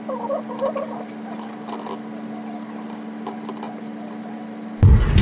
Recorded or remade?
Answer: recorded